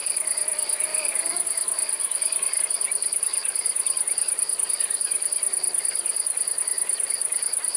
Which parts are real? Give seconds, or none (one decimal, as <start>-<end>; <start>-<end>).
0.0-7.8